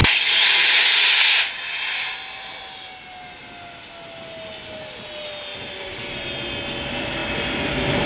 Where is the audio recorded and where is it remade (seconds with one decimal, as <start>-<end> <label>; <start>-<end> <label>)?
0.0-5.5 recorded; 5.5-6.3 remade; 6.3-8.1 recorded